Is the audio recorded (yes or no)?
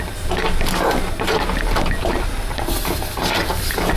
yes